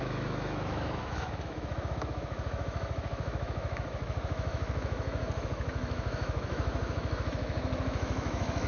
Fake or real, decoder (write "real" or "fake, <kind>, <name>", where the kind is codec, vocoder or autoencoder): fake, autoencoder, DAC-VAE